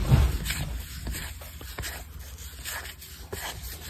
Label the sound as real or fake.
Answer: real